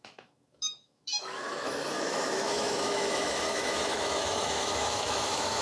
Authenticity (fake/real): fake